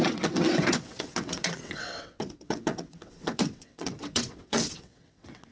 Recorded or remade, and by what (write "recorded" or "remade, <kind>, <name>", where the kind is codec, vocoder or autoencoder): remade, vocoder, WaveNeXt